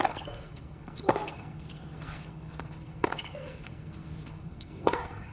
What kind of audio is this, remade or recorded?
remade